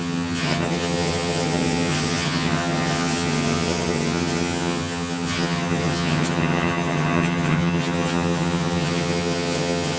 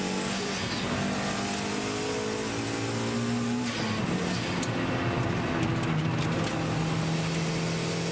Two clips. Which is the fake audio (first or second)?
first